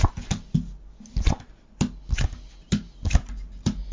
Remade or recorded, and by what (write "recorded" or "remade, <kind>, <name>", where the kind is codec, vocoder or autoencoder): recorded